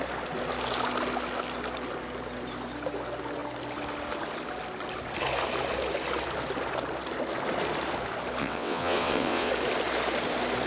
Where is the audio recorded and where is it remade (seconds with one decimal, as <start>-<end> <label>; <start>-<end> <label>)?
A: 0.0-8.4 recorded; 8.4-9.5 remade; 9.5-10.7 recorded